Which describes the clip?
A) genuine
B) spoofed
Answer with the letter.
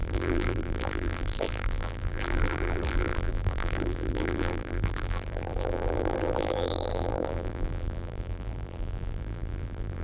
B